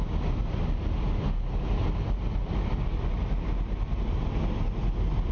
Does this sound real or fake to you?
real